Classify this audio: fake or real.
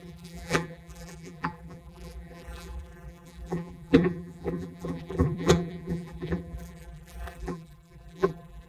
fake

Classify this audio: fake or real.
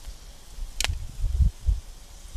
real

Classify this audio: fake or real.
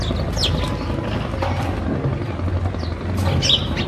real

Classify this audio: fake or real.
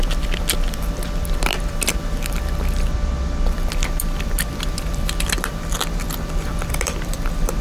fake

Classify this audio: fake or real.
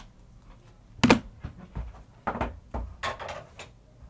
real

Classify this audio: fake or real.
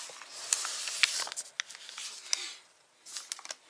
real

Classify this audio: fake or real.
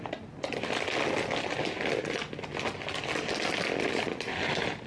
real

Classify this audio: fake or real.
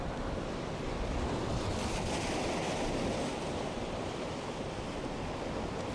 real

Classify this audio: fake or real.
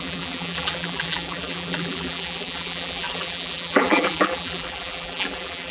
fake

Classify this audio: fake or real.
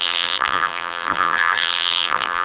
fake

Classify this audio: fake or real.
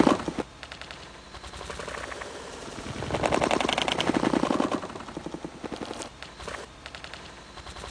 real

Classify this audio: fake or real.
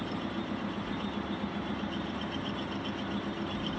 real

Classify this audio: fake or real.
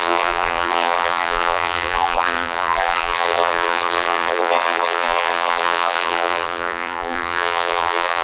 fake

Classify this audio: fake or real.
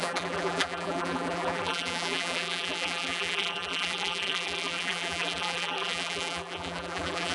fake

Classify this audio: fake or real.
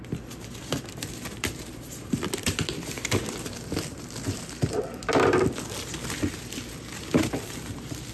fake